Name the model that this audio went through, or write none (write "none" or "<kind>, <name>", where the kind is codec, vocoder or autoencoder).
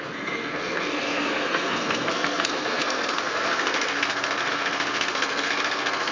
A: codec, SNAC